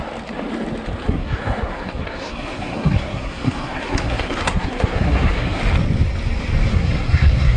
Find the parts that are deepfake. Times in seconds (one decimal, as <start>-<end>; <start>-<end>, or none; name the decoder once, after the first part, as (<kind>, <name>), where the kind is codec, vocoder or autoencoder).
1.0-5.6 (codec, SNAC); 6.7-7.6